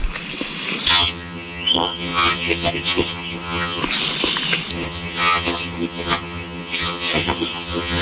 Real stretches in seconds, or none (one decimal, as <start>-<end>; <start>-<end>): 0.0-0.9; 3.8-4.7